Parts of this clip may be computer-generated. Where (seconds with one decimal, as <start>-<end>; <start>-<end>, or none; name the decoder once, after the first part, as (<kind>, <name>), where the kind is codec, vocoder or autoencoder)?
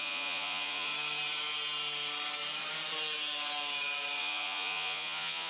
0.0-0.9 (vocoder, Vocos); 4.2-5.5